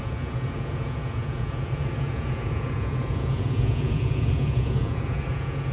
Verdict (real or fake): fake